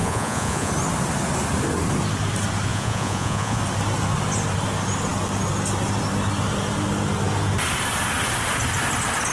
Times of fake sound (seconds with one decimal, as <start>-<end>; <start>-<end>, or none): 0.0-0.7; 2.7-3.6